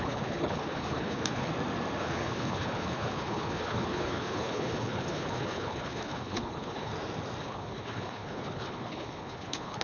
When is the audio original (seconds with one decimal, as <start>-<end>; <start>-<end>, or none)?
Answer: 1.5-2.0; 6.9-7.4